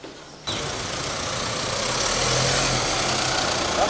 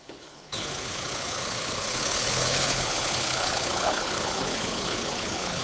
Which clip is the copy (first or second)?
second